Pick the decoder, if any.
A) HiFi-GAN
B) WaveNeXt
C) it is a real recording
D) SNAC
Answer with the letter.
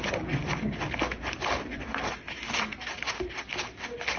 C